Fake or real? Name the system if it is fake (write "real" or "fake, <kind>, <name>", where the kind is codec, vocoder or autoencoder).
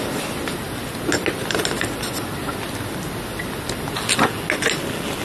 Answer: real